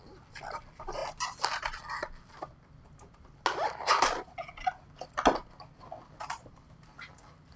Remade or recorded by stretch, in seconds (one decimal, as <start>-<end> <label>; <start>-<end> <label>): 0.0-7.6 recorded